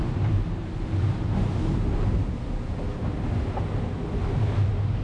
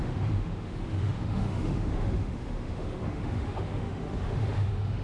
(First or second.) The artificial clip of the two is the second